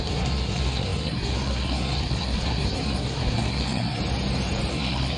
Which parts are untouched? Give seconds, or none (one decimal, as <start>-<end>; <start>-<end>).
4.0-4.7

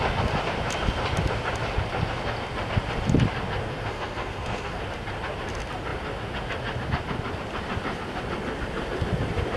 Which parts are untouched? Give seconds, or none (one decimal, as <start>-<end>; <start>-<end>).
0.0-3.6; 4.8-9.6

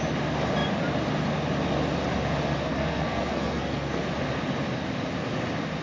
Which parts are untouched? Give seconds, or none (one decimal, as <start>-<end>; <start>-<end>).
0.0-2.7; 4.0-5.8

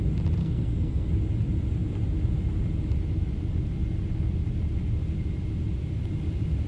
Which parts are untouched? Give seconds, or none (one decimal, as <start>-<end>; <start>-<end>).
0.0-0.4; 1.1-6.7